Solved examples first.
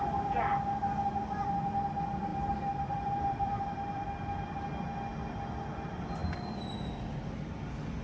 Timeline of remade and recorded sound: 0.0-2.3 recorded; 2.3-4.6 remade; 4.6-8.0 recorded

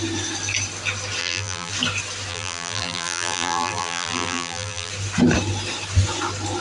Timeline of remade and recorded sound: 0.0-1.2 recorded; 1.2-1.7 remade; 1.7-2.3 recorded; 2.3-4.9 remade; 4.9-6.6 recorded

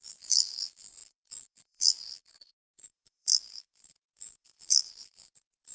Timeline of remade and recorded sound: 0.0-5.7 remade

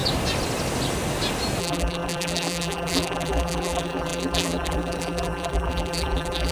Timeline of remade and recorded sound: 0.0-1.6 recorded; 1.6-6.5 remade

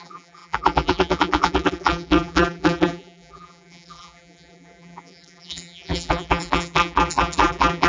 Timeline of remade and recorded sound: 0.0-7.9 remade

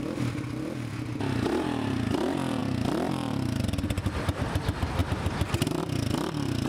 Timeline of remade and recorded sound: 0.0-6.7 recorded